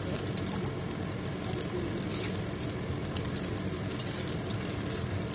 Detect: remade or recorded recorded